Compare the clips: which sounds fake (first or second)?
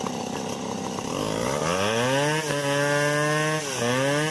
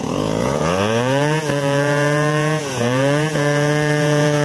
second